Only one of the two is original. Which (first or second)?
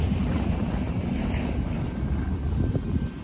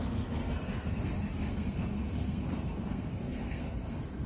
first